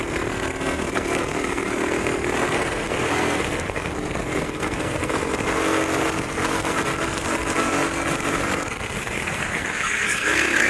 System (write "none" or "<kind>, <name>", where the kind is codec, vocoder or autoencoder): codec, SNAC